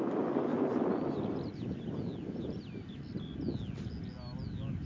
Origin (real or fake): real